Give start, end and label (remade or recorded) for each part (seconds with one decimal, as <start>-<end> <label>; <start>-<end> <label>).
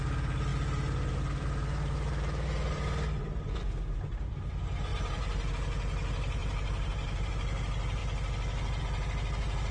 0.0-0.5 recorded; 0.5-3.7 remade; 3.7-4.9 recorded; 4.9-5.5 remade; 5.5-6.4 recorded; 6.4-7.3 remade; 7.3-9.7 recorded